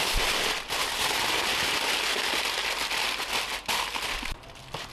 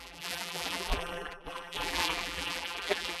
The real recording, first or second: first